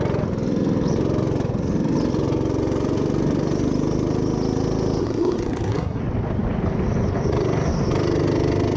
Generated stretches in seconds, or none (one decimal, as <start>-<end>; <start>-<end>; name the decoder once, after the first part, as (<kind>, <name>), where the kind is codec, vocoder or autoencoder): 5.0-6.0 (codec, SNAC)